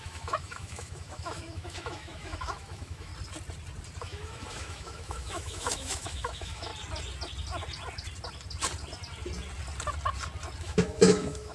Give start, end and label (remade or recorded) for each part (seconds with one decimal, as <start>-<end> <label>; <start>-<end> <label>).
0.0-3.1 remade; 3.1-4.0 recorded; 4.0-6.7 remade; 6.7-10.6 recorded; 10.6-11.5 remade